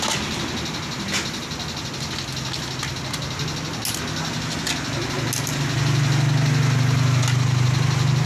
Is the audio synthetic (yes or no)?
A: no